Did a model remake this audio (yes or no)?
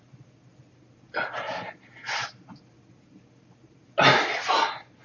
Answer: no